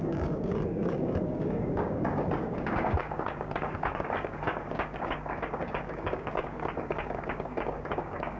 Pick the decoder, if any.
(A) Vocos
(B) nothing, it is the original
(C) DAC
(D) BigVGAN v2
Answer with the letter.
C